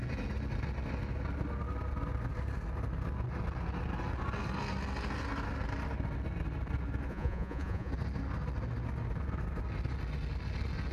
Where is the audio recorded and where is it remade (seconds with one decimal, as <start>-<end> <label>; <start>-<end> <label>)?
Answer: 0.0-7.1 recorded; 7.1-7.9 remade; 7.9-10.9 recorded